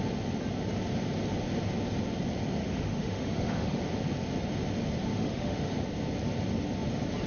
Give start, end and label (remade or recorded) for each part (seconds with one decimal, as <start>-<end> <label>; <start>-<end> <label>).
0.0-2.6 recorded; 2.6-3.8 remade; 3.8-5.1 recorded; 5.1-5.7 remade; 5.7-7.3 recorded